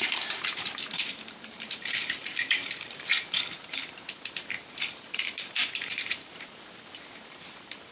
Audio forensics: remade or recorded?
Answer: remade